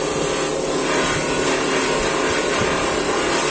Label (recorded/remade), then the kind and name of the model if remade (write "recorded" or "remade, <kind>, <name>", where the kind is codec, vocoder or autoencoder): recorded